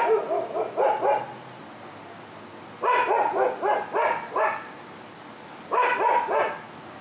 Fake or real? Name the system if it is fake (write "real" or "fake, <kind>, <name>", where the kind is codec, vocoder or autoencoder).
real